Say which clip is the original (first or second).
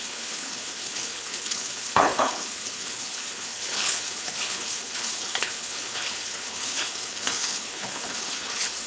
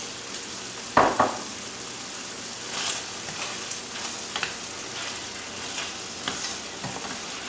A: second